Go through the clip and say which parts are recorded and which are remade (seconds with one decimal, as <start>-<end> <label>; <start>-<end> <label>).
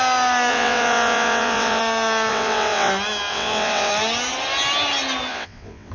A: 0.0-0.5 recorded; 0.5-1.8 remade; 1.8-2.3 recorded; 2.3-2.9 remade; 2.9-3.3 recorded; 3.3-3.9 remade; 3.9-5.3 recorded; 5.3-5.9 remade